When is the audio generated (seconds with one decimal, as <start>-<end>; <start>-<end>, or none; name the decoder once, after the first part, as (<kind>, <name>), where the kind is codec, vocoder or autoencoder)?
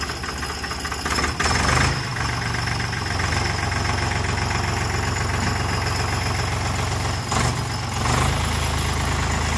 none